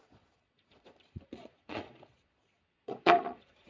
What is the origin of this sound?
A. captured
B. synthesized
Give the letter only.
B